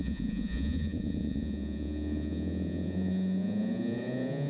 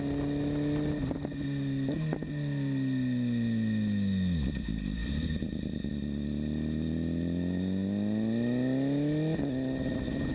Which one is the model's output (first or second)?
first